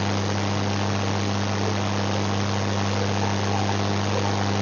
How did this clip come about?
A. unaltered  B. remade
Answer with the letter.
A